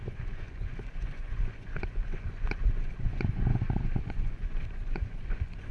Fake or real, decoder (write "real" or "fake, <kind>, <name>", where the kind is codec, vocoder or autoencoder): fake, vocoder, Vocos